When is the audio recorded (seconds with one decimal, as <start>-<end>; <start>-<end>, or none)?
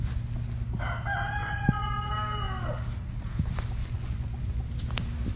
0.0-1.4; 2.1-3.8; 4.6-5.4